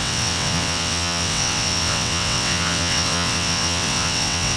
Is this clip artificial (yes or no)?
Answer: yes